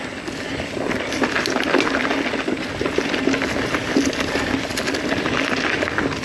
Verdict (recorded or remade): recorded